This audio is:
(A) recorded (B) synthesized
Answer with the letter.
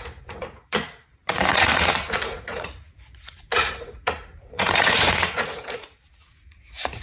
B